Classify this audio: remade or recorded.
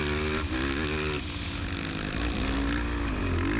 recorded